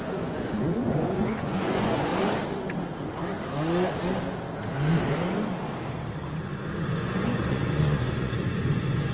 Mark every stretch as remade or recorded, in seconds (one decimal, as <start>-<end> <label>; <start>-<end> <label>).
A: 0.0-2.1 remade; 2.1-6.8 recorded; 6.8-9.1 remade